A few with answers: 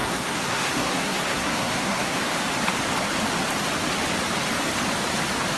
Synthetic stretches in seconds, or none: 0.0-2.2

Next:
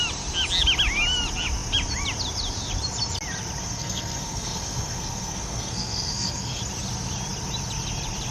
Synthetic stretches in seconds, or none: 3.6-6.6

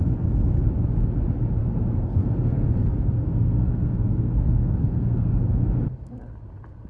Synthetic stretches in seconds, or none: 1.6-5.4